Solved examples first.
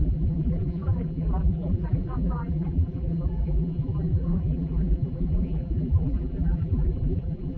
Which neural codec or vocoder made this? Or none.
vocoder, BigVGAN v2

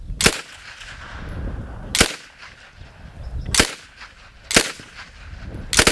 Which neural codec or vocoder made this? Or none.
none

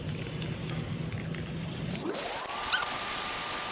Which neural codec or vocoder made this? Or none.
none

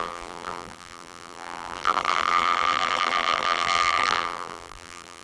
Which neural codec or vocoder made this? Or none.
vocoder, BigVGAN v2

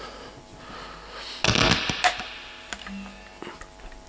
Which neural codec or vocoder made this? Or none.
none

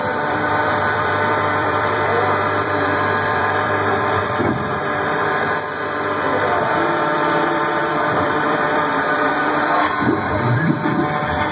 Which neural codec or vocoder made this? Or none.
vocoder, BigVGAN v2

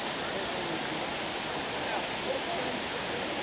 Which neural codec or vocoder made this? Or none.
none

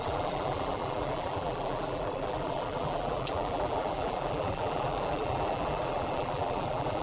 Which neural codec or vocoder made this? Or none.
vocoder, BigVGAN v2